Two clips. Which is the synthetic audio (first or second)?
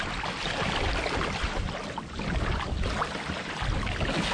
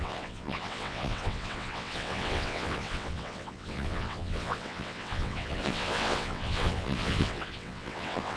second